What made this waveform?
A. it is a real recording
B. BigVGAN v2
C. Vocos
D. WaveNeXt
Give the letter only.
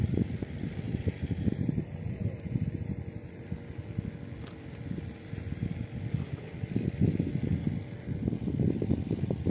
A